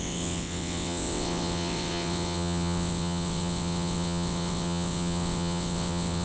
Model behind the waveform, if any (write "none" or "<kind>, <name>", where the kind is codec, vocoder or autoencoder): vocoder, WaveNeXt